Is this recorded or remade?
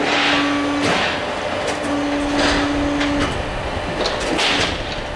recorded